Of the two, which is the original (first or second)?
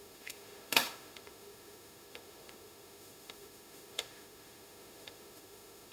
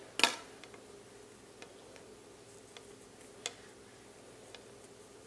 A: second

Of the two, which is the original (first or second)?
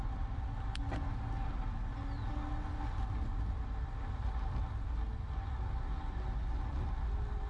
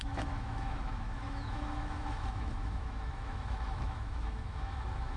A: first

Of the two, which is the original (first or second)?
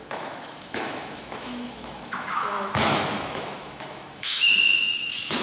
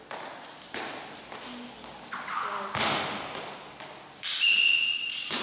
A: second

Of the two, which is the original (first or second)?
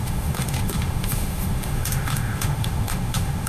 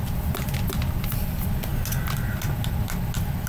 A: second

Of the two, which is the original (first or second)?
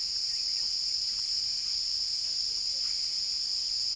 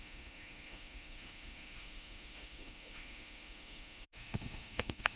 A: first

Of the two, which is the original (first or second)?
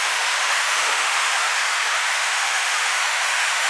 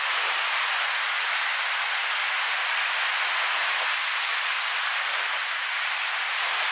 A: second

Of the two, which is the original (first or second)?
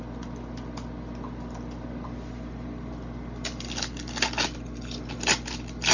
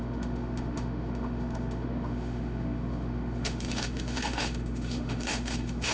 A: first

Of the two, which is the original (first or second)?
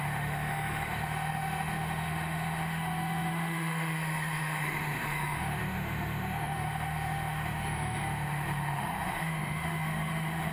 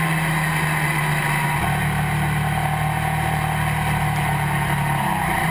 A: second